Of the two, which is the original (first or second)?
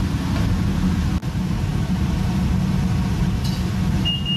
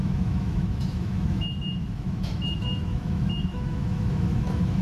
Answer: first